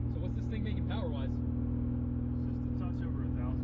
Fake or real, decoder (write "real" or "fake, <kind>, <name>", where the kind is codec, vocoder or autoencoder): real